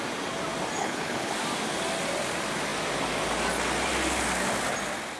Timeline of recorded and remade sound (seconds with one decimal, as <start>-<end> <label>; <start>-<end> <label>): 0.0-0.8 recorded; 0.8-1.3 remade; 1.3-5.2 recorded